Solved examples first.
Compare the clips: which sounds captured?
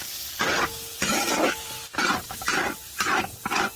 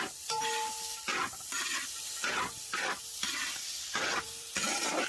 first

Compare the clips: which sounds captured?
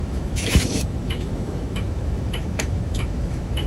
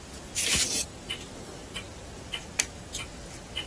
second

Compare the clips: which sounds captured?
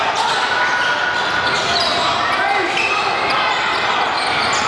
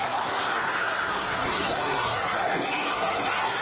first